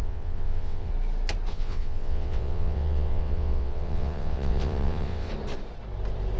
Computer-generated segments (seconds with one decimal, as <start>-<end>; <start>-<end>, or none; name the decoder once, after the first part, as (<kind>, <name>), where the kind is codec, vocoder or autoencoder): 0.0-0.9 (vocoder, WaveNeXt); 1.5-5.3